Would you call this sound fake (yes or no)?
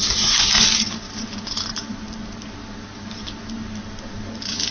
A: no